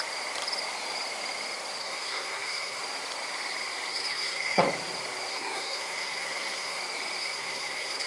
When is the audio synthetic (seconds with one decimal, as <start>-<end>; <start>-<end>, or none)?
1.8-2.8; 3.9-4.6; 5.3-6.8; 7.2-8.1